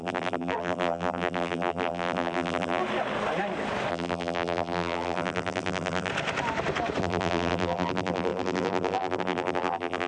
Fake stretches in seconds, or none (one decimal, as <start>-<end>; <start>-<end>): 0.0-2.8; 3.9-6.1; 7.0-10.1